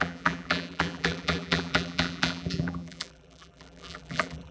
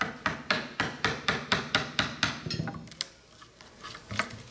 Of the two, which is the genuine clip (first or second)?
second